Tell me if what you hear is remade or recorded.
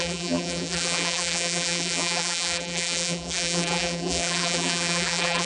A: remade